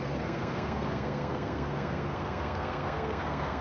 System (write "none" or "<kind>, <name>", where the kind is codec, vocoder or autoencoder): codec, SNAC